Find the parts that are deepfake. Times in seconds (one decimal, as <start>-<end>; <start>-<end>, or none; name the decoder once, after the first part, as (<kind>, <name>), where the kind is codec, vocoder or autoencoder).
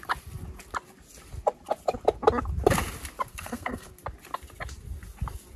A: 3.3-3.9 (codec, SNAC)